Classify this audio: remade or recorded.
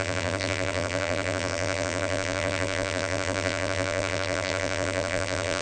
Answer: remade